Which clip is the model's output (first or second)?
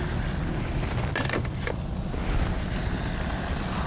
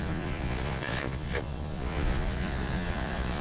second